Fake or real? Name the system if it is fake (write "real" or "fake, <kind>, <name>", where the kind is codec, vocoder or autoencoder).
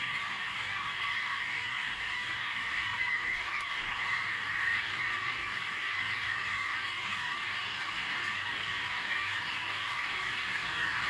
fake, codec, DAC